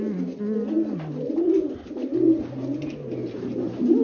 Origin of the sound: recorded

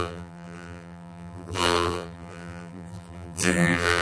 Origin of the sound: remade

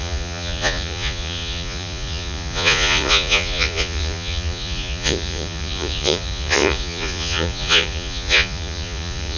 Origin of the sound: remade